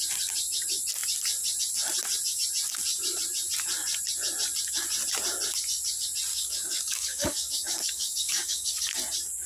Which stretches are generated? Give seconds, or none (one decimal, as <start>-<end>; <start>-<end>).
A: 6.3-8.9